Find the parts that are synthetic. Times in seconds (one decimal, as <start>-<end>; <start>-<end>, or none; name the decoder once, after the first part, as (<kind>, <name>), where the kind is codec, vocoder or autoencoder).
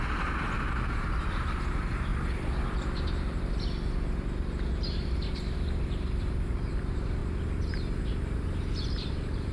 0.0-2.1 (vocoder, BigVGAN v2); 4.7-7.2; 8.0-9.5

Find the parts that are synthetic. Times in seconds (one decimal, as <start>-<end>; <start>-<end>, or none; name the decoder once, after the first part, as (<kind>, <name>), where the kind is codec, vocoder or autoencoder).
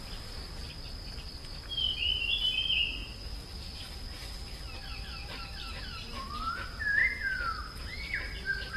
0.0-3.0 (vocoder, BigVGAN v2); 4.0-7.0; 7.8-8.8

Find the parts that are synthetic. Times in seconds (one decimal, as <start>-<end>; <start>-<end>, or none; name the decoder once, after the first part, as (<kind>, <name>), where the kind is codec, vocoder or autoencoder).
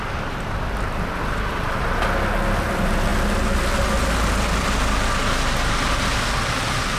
none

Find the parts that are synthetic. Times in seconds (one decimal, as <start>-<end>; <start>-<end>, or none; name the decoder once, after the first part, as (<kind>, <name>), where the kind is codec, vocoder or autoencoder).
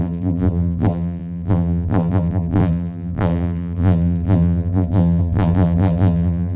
0.0-6.6 (vocoder, BigVGAN v2)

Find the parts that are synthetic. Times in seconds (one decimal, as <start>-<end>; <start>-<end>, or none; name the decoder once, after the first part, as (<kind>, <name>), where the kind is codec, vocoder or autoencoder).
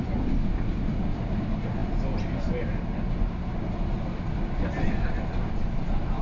0.0-1.8 (vocoder, BigVGAN v2); 5.5-6.2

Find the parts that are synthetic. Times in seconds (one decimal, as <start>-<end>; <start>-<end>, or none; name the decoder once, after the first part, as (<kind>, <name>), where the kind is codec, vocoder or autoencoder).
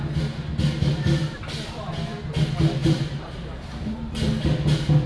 0.9-1.4 (vocoder, BigVGAN v2); 2.8-4.1